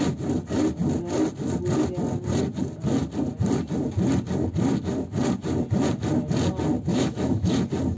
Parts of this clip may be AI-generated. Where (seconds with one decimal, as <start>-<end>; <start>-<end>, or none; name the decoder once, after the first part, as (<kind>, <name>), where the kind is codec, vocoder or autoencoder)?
6.9-7.5 (autoencoder, DAC-VAE)